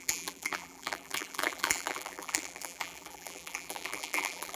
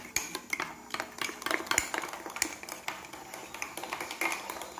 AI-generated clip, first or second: first